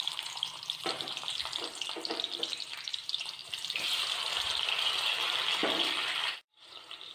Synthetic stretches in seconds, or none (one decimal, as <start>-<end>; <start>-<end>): 0.0-1.4; 2.7-5.6; 6.2-7.1